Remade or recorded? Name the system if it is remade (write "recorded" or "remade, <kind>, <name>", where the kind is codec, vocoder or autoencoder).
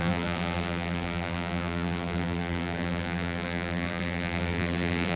remade, vocoder, BigVGAN v2